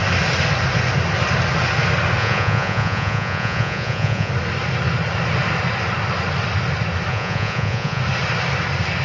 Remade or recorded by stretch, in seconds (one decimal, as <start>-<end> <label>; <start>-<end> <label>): 0.0-2.2 recorded; 2.2-4.3 remade; 4.3-7.1 recorded; 7.1-8.0 remade; 8.0-9.0 recorded